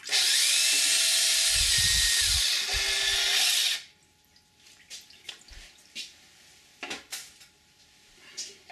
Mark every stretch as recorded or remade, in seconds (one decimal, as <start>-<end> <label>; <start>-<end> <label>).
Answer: 0.0-8.7 recorded